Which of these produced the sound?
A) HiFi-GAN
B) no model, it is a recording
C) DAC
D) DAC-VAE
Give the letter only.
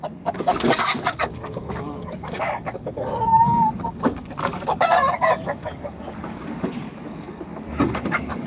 C